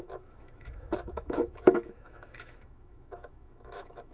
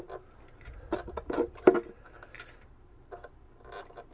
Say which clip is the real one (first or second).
second